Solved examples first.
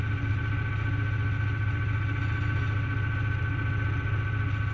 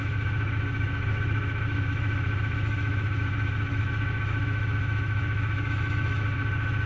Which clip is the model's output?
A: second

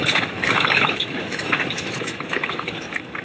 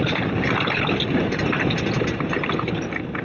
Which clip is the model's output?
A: first